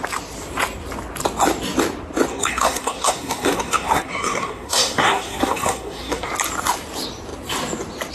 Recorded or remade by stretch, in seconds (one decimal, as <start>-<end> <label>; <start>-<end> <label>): 0.0-2.3 recorded; 2.3-6.3 remade; 6.3-8.1 recorded

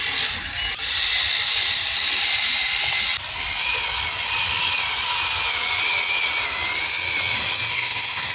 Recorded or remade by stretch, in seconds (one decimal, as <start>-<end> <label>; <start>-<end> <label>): 0.0-7.7 recorded; 7.7-8.3 remade

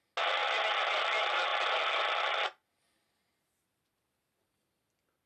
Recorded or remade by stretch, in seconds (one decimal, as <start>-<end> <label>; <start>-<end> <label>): 0.0-5.3 recorded

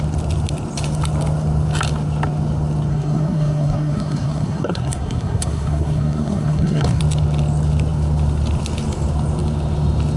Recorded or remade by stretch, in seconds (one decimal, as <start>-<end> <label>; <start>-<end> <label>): 0.0-2.9 recorded; 2.9-7.0 remade; 7.0-10.2 recorded

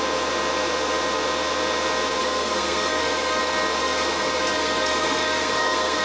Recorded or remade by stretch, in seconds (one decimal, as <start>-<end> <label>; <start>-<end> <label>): 0.0-2.2 recorded; 2.2-3.4 remade; 3.4-3.8 recorded; 3.8-6.0 remade

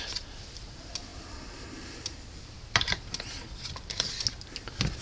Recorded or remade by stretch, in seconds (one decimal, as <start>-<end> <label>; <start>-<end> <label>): 0.0-5.0 recorded

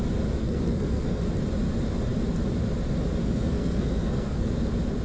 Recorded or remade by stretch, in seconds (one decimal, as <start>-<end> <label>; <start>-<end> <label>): 0.0-0.4 recorded; 0.4-1.2 remade; 1.2-3.2 recorded; 3.2-4.5 remade; 4.5-5.0 recorded

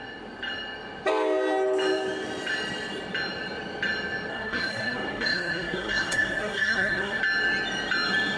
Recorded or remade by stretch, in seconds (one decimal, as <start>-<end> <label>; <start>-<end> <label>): 0.0-4.3 recorded; 4.3-7.2 remade; 7.2-8.4 recorded